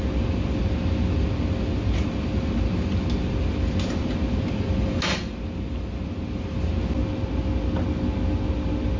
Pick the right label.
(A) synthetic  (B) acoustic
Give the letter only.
B